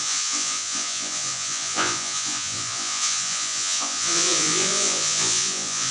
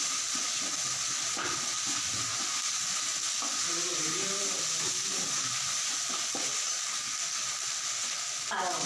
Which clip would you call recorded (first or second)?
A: second